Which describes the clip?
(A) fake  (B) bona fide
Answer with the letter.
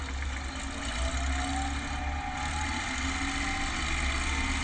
B